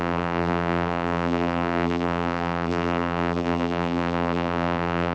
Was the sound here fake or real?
fake